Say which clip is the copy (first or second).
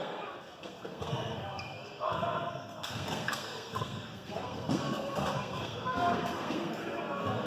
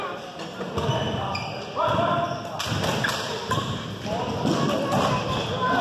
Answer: first